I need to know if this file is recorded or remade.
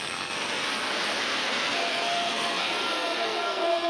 remade